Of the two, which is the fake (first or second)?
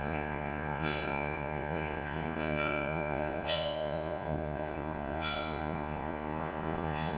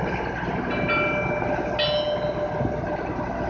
first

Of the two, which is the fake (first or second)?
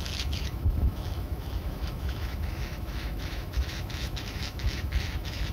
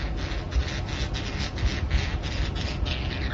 first